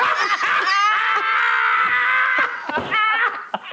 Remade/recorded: recorded